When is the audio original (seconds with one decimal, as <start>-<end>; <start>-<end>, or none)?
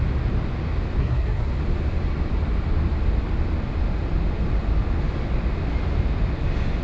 0.0-1.0; 1.5-6.8